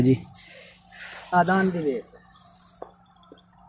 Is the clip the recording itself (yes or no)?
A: yes